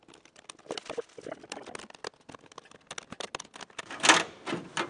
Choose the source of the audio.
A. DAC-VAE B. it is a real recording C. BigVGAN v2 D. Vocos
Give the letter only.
B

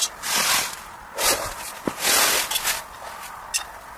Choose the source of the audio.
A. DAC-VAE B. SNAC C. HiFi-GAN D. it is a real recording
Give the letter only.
D